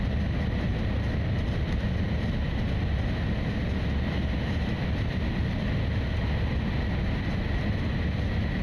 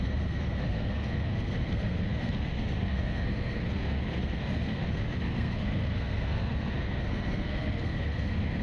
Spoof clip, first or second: second